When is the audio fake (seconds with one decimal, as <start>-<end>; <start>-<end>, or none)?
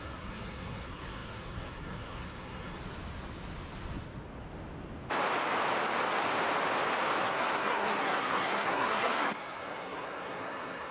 0.0-2.8; 7.2-10.9